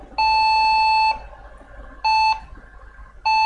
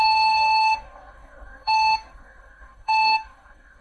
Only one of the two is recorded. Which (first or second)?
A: first